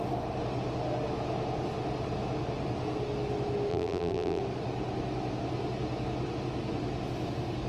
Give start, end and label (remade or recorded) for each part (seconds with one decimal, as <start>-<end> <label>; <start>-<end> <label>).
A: 0.0-3.7 recorded; 3.7-4.4 remade; 4.4-7.7 recorded